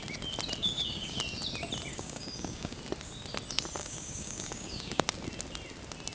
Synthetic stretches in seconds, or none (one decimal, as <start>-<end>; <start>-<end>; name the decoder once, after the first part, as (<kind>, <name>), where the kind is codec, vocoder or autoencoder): 0.6-1.2 (codec, DAC); 1.9-2.8; 3.8-5.0